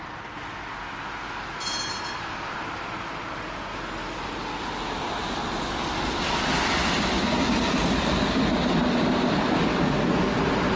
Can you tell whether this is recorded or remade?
recorded